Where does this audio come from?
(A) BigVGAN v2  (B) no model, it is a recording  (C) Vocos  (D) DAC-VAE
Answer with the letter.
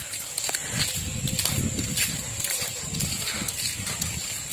B